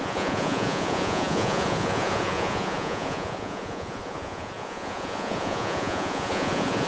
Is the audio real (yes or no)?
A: no